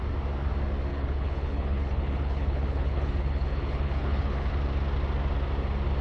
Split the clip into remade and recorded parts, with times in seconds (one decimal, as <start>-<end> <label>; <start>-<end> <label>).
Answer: 0.0-0.9 recorded; 0.9-4.5 remade; 4.5-6.0 recorded